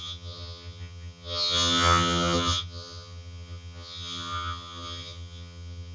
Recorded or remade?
remade